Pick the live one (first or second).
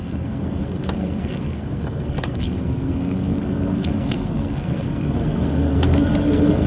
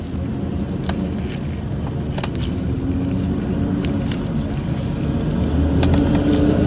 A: second